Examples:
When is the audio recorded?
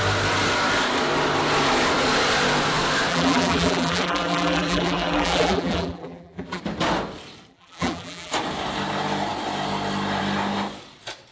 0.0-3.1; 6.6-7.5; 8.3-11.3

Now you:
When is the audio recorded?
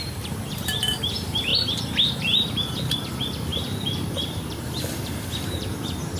1.5-2.2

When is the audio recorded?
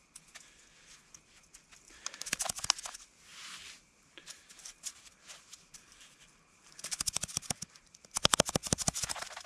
0.0-3.3; 7.6-8.6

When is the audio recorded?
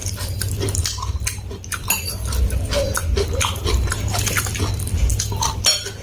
1.2-5.1; 5.6-6.0